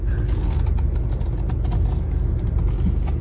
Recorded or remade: recorded